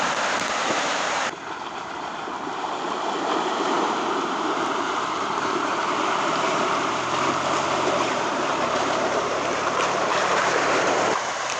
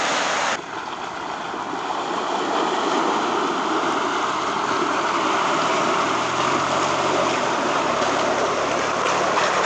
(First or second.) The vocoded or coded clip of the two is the first